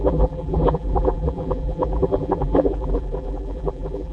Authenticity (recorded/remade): remade